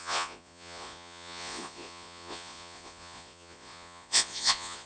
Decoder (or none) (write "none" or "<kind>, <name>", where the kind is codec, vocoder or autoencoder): vocoder, Vocos